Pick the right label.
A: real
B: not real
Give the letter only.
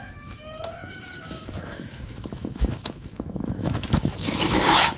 B